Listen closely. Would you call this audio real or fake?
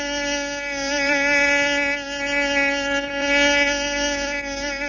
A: real